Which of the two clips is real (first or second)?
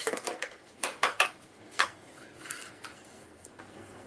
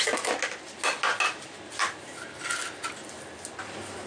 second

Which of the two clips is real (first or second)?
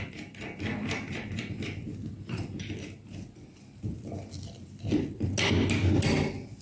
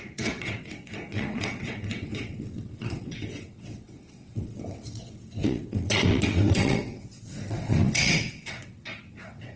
first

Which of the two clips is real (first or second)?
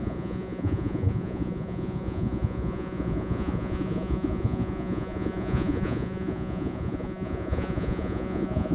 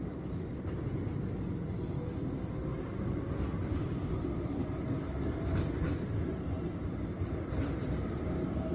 second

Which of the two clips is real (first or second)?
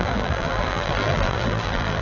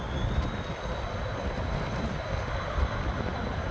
second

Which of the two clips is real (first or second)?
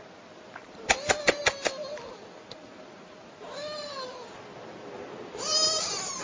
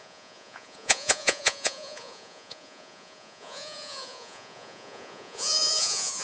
first